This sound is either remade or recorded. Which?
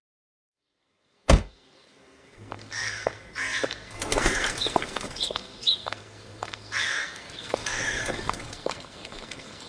remade